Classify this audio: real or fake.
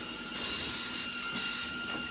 real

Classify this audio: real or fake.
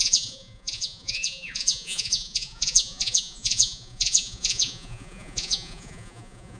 fake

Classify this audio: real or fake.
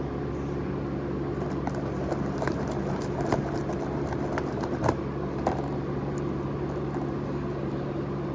real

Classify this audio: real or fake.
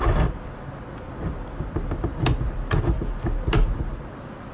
real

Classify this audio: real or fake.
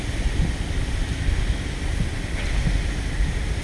real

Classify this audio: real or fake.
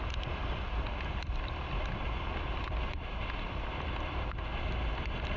real